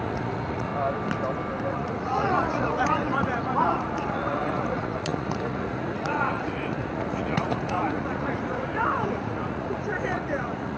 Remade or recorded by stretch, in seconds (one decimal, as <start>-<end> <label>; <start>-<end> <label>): 0.0-0.7 remade; 0.7-1.7 recorded; 1.7-10.8 remade